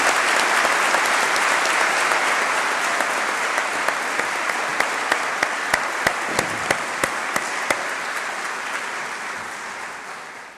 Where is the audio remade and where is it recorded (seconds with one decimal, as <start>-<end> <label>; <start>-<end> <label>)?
0.0-10.6 recorded